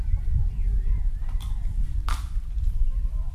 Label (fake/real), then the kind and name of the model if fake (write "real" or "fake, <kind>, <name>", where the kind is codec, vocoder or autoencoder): real